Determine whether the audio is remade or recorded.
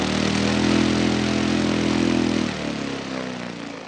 recorded